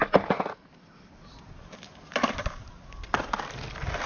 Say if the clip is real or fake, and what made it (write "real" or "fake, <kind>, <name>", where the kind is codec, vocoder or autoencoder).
real